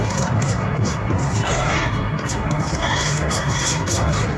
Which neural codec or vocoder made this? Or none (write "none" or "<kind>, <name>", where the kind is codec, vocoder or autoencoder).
codec, SNAC